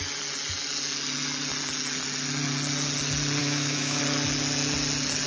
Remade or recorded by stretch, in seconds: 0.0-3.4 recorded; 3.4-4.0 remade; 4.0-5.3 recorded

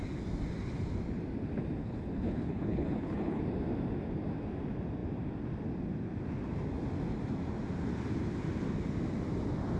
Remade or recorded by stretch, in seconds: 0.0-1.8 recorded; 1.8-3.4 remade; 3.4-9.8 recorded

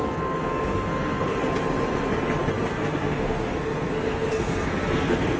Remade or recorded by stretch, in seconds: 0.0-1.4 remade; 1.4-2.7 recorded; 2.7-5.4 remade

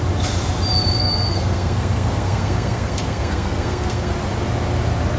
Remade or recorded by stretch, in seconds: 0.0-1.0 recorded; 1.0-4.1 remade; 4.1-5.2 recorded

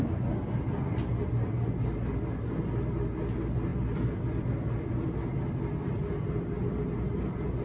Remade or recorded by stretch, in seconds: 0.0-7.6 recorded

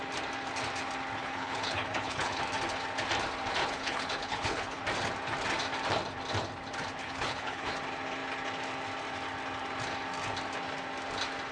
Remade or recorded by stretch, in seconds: 0.0-1.2 recorded; 1.2-2.4 remade; 2.4-3.6 recorded; 3.6-4.8 remade; 4.8-7.0 recorded; 7.0-7.7 remade; 7.7-11.5 recorded

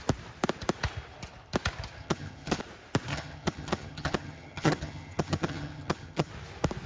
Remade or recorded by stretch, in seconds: 0.0-2.0 recorded; 2.0-2.6 remade; 2.6-3.1 recorded; 3.1-6.3 remade; 6.3-6.9 recorded

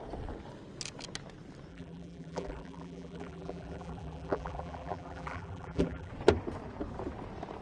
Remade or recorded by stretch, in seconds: 0.0-1.7 recorded; 1.7-6.1 remade; 6.1-7.6 recorded